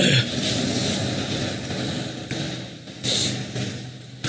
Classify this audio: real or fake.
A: real